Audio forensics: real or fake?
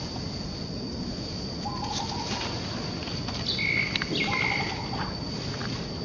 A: real